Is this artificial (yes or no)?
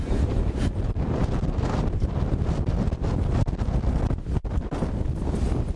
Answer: no